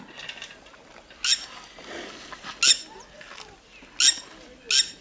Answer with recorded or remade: recorded